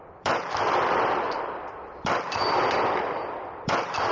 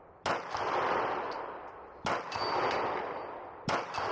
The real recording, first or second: second